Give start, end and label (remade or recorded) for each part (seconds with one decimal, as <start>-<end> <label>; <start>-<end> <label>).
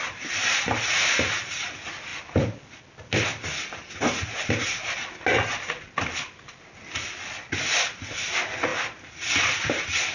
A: 0.0-10.1 recorded